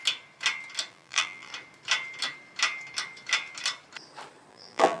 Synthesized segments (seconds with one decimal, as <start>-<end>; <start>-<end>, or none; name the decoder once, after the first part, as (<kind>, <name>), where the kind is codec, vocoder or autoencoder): 0.9-1.5 (vocoder, BigVGAN v2); 4.5-5.0